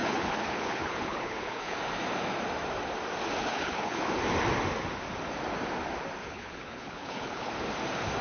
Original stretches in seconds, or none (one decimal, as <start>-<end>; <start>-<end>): 1.8-3.4; 4.1-6.2; 7.5-8.2